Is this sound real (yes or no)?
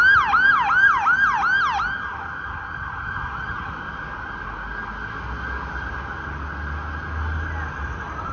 yes